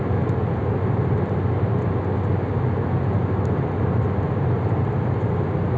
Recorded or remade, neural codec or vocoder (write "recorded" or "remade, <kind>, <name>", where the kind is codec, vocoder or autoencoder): recorded